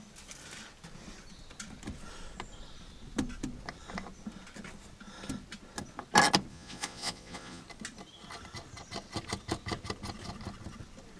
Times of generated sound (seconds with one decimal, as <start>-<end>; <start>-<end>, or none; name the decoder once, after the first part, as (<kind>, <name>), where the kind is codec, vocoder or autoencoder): 6.5-7.6 (vocoder, Vocos)